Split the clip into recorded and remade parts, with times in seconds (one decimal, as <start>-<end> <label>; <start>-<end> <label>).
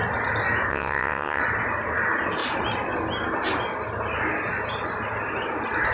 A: 0.0-0.7 recorded; 0.7-1.4 remade; 1.4-5.9 recorded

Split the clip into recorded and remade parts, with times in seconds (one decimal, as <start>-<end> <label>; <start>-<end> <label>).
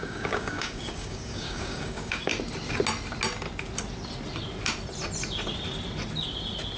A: 0.0-2.3 remade; 2.3-6.8 recorded